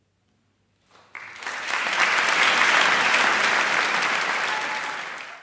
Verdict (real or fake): real